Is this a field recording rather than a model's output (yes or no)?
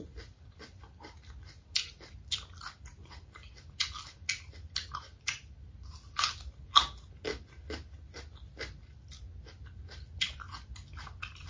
yes